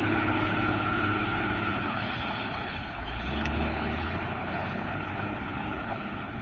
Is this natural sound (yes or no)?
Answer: no